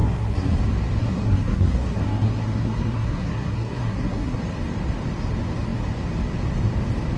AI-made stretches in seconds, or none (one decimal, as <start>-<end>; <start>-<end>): 0.0-0.6; 1.0-4.4